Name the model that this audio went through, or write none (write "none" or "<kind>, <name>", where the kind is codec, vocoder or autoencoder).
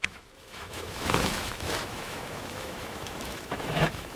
autoencoder, DAC-VAE